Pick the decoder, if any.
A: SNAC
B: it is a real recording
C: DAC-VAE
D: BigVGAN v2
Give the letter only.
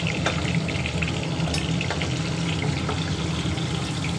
B